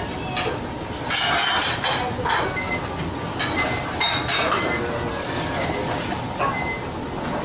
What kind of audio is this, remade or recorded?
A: recorded